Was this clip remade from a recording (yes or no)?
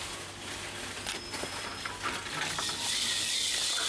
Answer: no